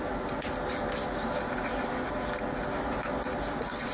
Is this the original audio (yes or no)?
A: yes